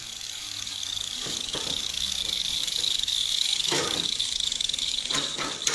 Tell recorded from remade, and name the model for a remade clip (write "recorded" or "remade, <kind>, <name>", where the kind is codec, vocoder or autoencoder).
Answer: remade, codec, DAC